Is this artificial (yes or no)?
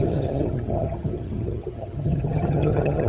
yes